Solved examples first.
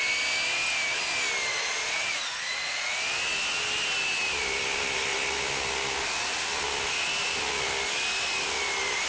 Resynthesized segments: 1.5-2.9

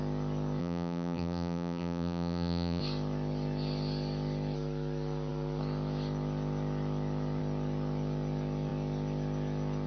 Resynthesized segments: 0.6-2.8

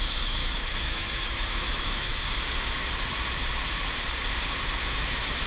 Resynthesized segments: 0.0-2.2; 4.8-5.5

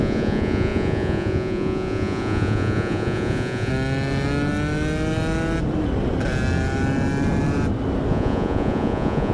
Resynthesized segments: 0.0-3.7; 8.1-9.3

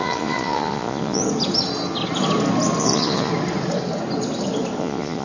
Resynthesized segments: 0.0-1.2; 2.8-3.3; 4.8-5.2

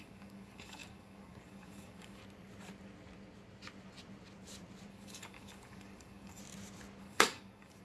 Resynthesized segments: 0.0-2.2; 4.9-6.4; 7.0-7.8